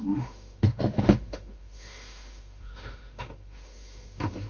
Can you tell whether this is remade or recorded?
remade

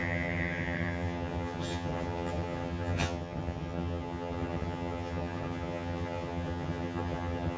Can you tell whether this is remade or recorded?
remade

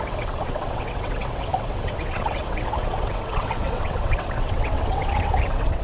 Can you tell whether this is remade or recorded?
remade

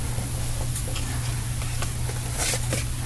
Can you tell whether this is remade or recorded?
recorded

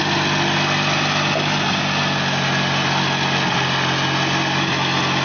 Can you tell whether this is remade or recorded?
recorded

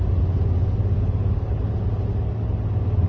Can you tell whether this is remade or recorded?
recorded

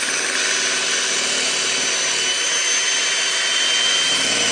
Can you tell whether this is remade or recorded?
recorded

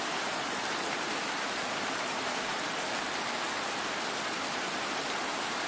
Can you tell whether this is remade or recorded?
remade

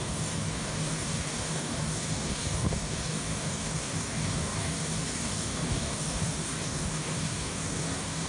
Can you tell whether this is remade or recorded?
remade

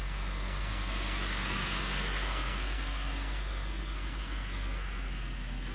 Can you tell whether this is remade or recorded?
remade